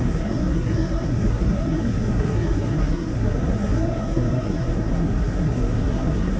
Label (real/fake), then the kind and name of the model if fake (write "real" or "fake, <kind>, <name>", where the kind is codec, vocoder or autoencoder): fake, codec, SNAC